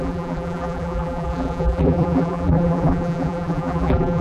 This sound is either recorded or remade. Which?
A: remade